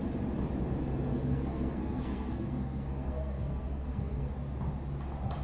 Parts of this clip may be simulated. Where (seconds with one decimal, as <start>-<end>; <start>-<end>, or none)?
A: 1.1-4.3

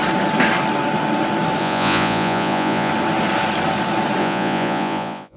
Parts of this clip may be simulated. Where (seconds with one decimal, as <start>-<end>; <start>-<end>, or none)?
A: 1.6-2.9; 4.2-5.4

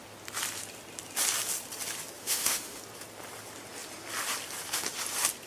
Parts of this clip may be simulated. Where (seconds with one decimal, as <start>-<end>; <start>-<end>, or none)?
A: 2.2-2.8

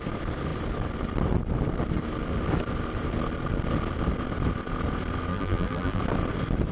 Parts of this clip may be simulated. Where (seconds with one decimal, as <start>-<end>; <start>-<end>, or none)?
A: 5.3-6.0

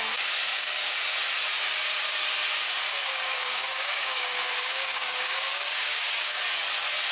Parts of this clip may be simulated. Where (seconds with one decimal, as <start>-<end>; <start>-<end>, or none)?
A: 0.5-1.0; 2.9-6.4